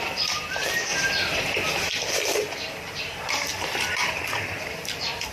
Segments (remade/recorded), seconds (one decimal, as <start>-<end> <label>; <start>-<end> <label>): 0.0-0.9 remade; 0.9-1.9 recorded; 1.9-3.5 remade; 3.5-4.8 recorded; 4.8-5.3 remade